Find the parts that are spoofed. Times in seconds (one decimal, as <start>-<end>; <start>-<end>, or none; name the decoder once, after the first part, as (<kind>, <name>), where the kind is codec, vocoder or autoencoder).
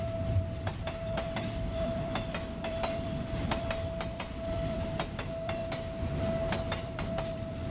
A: 0.0-5.6 (vocoder, BigVGAN v2); 6.8-7.7